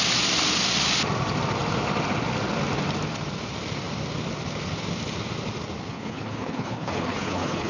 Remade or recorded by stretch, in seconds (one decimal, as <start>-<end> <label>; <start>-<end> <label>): 0.0-5.9 recorded; 5.9-7.7 remade